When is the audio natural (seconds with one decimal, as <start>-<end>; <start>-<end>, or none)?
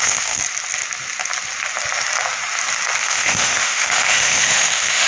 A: 0.4-3.0